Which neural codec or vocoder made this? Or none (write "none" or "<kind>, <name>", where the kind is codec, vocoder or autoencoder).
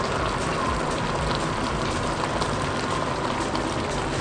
none